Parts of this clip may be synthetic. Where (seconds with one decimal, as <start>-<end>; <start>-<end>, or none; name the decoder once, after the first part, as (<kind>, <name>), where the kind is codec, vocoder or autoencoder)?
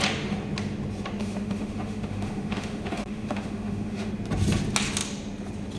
1.2-4.1 (autoencoder, DAC-VAE)